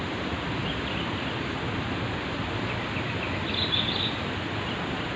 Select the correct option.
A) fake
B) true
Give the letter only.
B